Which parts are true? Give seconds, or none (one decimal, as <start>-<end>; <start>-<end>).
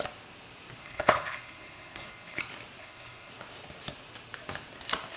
0.0-0.8; 2.4-2.8; 3.3-5.2